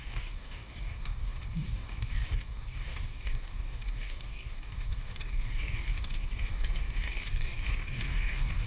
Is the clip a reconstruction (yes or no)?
yes